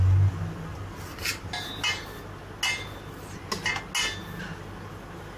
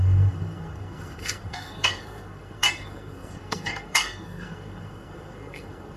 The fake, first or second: second